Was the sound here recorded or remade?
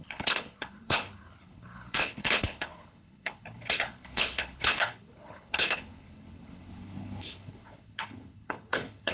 remade